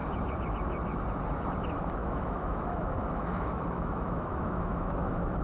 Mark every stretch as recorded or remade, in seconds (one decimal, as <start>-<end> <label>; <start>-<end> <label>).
0.0-2.0 recorded; 2.0-5.4 remade